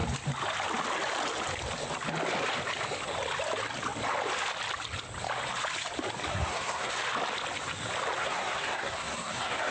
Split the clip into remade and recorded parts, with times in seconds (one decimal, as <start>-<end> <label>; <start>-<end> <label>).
0.0-6.3 recorded; 6.3-6.9 remade; 6.9-8.2 recorded; 8.2-9.7 remade